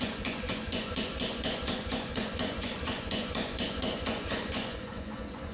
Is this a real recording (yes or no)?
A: no